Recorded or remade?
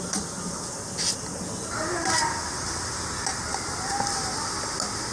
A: recorded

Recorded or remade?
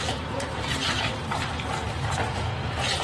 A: remade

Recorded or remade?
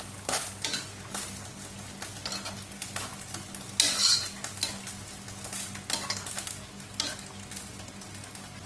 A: recorded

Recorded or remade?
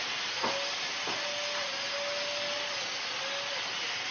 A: recorded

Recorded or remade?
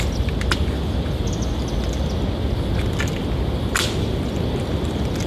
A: recorded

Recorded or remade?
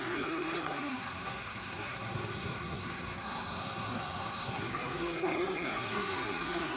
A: remade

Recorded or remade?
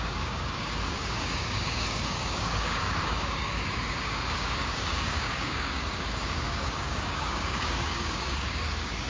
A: remade